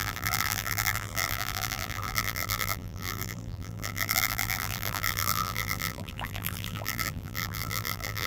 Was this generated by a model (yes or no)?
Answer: yes